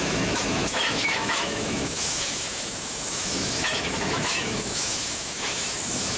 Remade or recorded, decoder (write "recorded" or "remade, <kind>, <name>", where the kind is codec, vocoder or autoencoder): remade, autoencoder, DAC-VAE